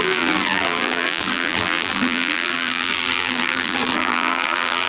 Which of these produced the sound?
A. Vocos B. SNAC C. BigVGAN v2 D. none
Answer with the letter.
C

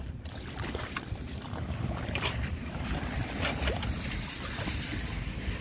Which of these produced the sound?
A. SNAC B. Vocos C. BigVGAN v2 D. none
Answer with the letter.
C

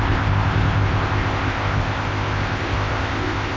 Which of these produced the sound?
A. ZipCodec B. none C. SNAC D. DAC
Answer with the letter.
A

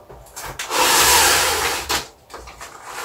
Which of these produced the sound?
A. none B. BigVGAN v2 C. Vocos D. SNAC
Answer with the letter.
A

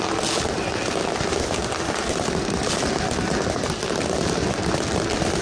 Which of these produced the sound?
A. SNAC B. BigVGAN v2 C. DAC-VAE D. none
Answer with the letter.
D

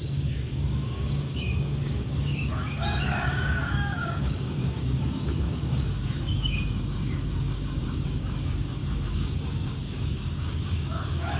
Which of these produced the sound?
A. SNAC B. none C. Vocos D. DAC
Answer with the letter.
D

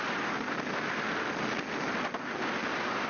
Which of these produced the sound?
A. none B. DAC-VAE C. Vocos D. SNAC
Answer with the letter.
A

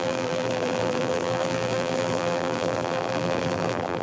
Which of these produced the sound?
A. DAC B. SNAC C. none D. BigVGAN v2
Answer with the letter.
D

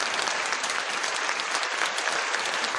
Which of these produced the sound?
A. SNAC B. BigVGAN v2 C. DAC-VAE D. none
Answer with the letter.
D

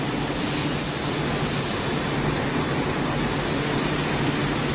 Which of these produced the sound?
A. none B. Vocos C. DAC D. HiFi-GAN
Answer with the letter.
A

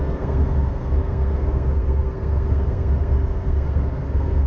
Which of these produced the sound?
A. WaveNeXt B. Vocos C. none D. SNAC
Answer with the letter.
D